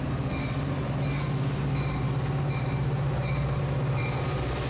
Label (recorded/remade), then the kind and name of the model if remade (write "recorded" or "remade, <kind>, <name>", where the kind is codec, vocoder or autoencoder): recorded